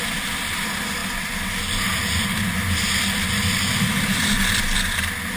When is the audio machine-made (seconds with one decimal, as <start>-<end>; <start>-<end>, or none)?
none